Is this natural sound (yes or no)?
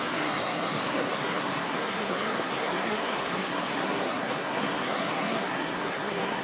no